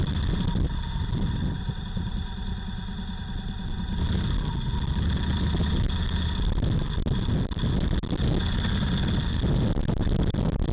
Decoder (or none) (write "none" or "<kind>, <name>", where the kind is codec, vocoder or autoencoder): none